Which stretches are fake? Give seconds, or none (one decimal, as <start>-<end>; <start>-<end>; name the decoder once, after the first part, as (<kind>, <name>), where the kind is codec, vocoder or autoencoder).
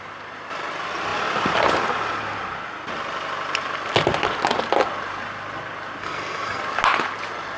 6.0-6.6 (codec, SNAC)